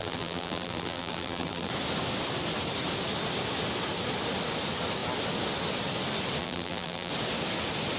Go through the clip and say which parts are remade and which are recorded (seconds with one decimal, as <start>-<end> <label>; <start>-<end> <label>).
0.0-1.7 remade; 1.7-6.4 recorded; 6.4-7.1 remade; 7.1-8.0 recorded